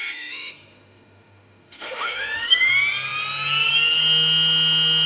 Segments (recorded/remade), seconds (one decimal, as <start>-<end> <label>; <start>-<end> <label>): 0.0-2.7 remade; 2.7-5.1 recorded